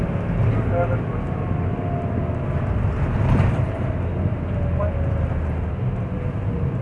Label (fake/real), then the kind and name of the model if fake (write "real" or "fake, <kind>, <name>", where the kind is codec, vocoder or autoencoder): real